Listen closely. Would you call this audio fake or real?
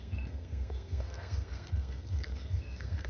fake